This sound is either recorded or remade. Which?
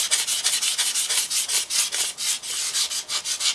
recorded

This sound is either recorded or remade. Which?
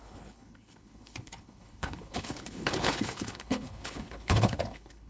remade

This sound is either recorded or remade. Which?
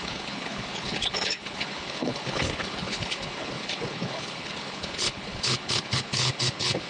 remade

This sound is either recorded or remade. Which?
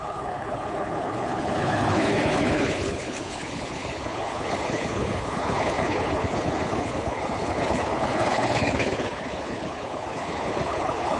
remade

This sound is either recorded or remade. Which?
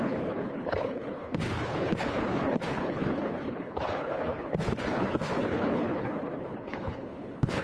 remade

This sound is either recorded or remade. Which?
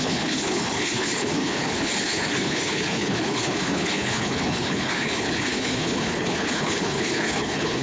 remade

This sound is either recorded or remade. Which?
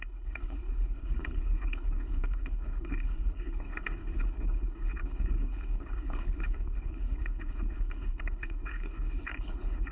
remade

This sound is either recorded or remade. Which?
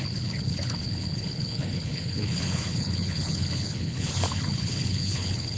remade